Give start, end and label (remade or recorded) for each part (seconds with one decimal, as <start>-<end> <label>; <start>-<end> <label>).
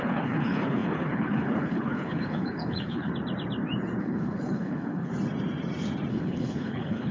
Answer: 0.0-3.1 remade; 3.1-4.0 recorded; 4.0-5.1 remade; 5.1-6.1 recorded; 6.1-7.1 remade